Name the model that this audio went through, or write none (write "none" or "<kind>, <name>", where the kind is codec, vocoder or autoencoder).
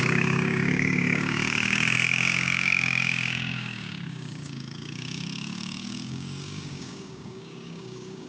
codec, DAC